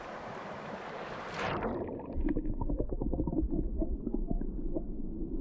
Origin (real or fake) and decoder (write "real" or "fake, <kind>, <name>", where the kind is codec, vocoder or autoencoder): real